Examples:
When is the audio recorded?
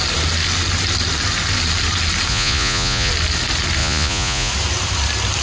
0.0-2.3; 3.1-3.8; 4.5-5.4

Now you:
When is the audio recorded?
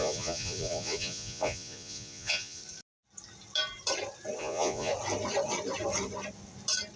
2.6-4.4; 4.9-7.0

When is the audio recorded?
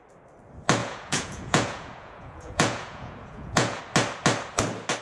0.0-0.8; 3.8-5.0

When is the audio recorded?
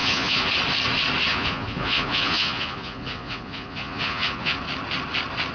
0.5-1.3; 4.6-5.5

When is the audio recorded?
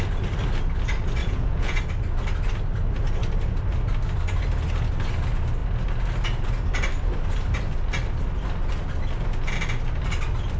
0.0-1.2; 1.8-10.6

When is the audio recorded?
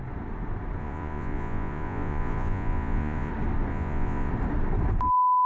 0.0-0.8; 3.3-3.7; 4.3-5.5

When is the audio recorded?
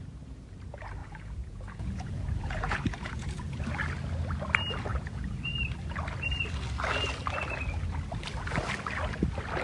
0.0-1.0; 3.6-4.9; 5.5-9.6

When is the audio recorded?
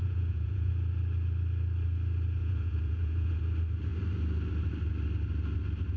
0.7-2.4; 3.4-6.0